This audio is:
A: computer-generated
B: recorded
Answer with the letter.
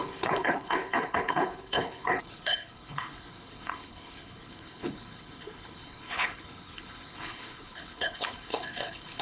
A